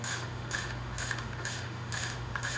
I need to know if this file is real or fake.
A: fake